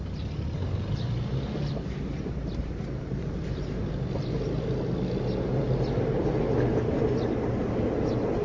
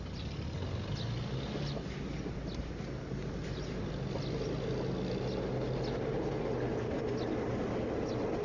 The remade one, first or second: first